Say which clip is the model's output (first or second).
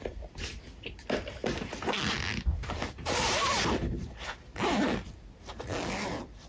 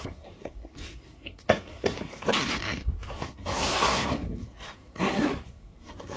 second